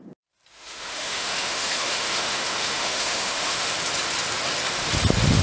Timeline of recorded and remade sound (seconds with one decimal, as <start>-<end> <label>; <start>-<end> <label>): 0.0-0.5 recorded; 0.5-3.7 remade; 3.7-5.4 recorded